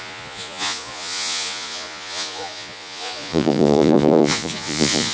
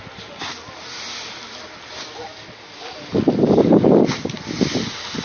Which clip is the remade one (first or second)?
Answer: first